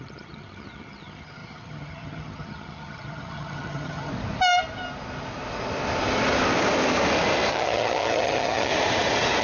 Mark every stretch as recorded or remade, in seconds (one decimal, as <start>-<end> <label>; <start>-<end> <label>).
0.0-4.1 remade; 4.1-7.5 recorded; 7.5-8.7 remade; 8.7-9.4 recorded